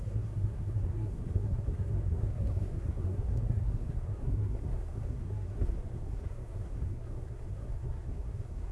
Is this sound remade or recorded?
remade